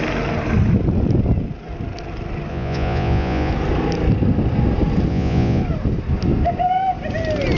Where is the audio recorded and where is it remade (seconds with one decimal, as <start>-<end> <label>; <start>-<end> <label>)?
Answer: 0.0-2.5 recorded; 2.5-3.5 remade; 3.5-5.1 recorded; 5.1-5.6 remade; 5.6-7.6 recorded

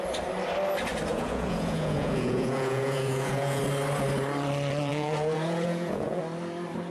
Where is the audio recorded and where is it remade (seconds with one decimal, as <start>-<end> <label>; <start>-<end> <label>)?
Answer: 0.0-1.1 recorded; 1.1-3.6 remade; 3.6-4.9 recorded; 4.9-6.2 remade; 6.2-6.9 recorded

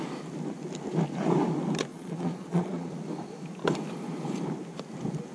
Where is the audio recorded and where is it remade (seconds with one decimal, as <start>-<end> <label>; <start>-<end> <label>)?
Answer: 0.0-1.9 recorded; 1.9-2.9 remade; 2.9-5.3 recorded

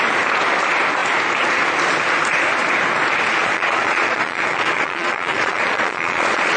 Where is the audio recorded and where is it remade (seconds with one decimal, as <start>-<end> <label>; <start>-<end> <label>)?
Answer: 0.0-3.4 recorded; 3.4-6.6 remade

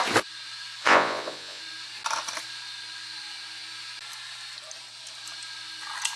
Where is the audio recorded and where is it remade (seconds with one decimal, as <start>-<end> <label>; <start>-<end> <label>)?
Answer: 0.0-0.8 recorded; 0.8-1.6 remade; 1.6-6.2 recorded

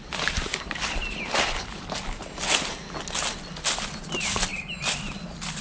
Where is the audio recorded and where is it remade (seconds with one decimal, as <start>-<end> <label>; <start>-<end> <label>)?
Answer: 0.0-5.6 recorded

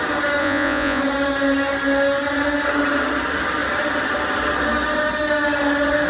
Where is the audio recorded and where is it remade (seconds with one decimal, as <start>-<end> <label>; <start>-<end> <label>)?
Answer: 0.0-0.4 recorded; 0.4-1.0 remade; 1.0-6.1 recorded